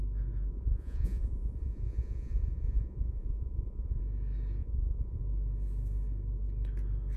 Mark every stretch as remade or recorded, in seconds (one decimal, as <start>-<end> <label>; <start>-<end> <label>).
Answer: 0.0-0.5 recorded; 0.5-4.0 remade; 4.0-4.6 recorded; 4.6-5.2 remade; 5.2-7.2 recorded